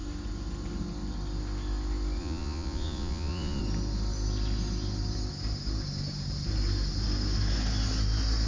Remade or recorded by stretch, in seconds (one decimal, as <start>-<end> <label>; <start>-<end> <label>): 0.0-2.2 recorded; 2.2-3.6 remade; 3.6-8.5 recorded